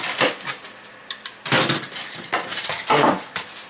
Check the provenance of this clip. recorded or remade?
recorded